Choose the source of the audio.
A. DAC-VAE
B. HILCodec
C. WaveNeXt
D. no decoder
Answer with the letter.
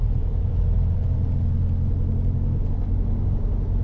D